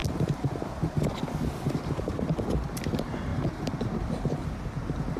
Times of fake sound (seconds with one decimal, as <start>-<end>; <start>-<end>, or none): none

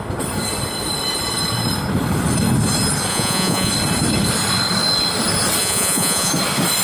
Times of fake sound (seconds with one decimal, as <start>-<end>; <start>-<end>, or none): 3.1-3.7; 5.6-6.3

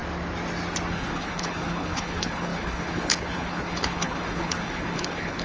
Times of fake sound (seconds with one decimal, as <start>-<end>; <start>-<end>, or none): 0.9-5.4

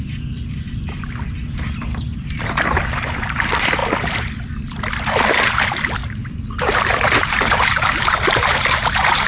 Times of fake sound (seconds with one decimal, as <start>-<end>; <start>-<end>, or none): 6.0-9.3